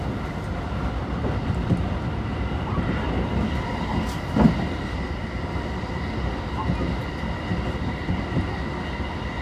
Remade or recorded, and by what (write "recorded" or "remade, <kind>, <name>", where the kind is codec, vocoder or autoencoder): recorded